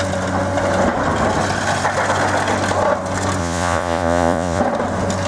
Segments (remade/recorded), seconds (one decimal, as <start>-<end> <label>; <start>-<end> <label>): 0.0-3.4 recorded; 3.4-4.6 remade; 4.6-5.3 recorded